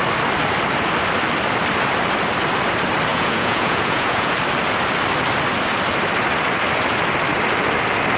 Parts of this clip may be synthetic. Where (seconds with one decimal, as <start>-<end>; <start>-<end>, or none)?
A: 3.1-4.3